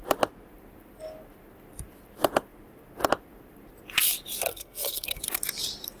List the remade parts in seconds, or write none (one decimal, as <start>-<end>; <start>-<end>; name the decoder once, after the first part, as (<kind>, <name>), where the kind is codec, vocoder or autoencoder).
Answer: 4.5-5.2 (codec, SNAC)